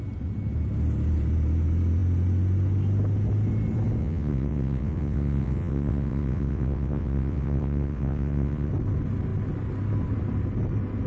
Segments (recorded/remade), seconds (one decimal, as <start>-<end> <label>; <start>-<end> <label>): 0.0-4.0 recorded; 4.0-8.7 remade; 8.7-11.1 recorded